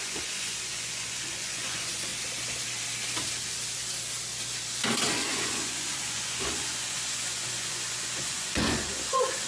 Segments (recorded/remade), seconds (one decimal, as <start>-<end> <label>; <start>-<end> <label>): 0.0-2.1 remade; 2.1-5.1 recorded; 5.1-9.5 remade